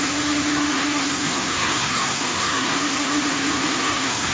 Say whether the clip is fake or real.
fake